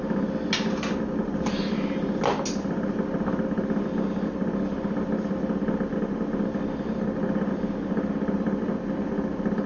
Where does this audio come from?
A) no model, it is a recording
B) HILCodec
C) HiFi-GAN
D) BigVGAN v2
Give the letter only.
A